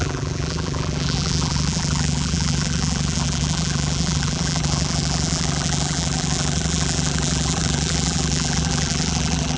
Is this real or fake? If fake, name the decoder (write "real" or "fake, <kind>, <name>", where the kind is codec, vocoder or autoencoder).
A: fake, vocoder, BigVGAN v2